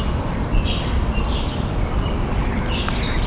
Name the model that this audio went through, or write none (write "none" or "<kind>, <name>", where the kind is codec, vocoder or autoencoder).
none